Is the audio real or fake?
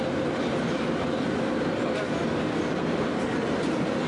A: real